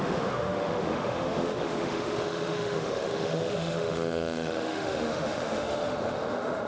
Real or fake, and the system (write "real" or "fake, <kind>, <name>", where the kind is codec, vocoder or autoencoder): fake, autoencoder, DAC-VAE